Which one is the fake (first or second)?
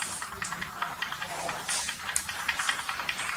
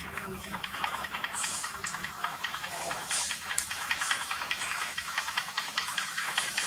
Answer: second